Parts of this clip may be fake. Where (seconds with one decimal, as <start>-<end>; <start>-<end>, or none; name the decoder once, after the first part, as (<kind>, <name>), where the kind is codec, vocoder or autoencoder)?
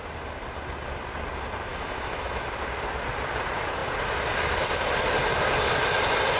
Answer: 1.7-2.4 (autoencoder, DAC-VAE)